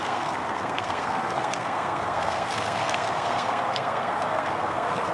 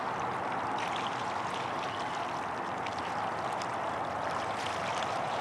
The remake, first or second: first